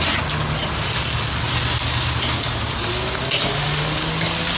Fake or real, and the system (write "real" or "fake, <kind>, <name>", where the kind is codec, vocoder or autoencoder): real